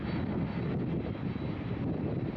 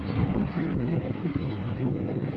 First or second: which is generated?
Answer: second